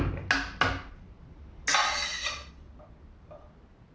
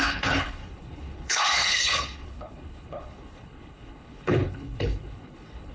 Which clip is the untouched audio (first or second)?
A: first